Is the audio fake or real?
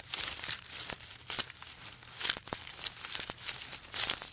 fake